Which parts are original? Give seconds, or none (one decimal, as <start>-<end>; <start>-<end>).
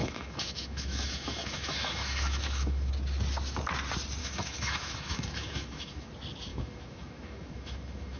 2.9-4.2; 6.1-6.5